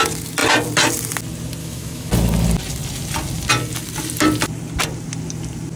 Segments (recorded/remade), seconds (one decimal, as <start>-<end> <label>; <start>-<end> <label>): 0.0-1.6 recorded; 1.6-2.1 remade; 2.1-5.8 recorded